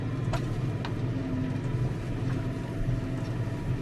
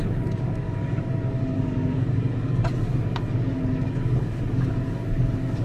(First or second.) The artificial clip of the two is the second